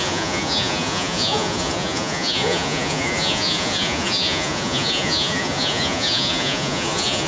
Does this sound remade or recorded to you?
remade